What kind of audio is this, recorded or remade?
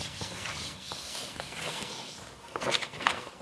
remade